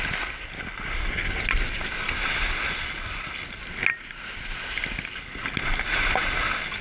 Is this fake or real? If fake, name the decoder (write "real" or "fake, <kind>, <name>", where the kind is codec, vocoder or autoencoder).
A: real